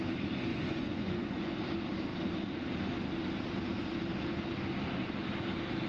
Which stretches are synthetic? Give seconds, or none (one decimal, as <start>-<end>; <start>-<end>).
0.5-1.5

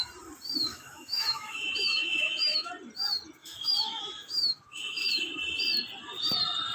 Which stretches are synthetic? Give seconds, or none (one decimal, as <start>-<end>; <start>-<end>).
0.7-2.7; 3.4-5.3

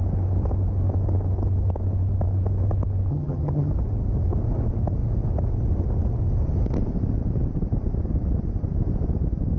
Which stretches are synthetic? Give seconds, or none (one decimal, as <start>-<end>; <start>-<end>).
3.1-3.7

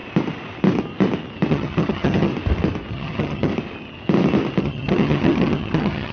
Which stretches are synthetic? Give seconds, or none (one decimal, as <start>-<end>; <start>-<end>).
1.5-2.3; 2.9-3.5; 4.6-6.1

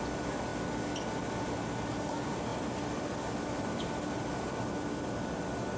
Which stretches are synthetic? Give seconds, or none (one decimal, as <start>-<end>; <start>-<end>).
none

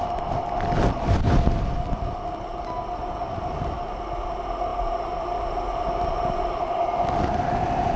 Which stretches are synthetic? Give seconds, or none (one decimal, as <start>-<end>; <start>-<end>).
none

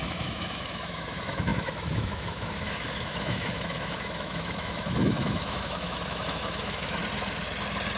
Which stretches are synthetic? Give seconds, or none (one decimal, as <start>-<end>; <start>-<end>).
0.0-7.0